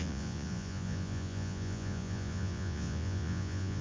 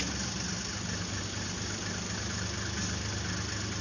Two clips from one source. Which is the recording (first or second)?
second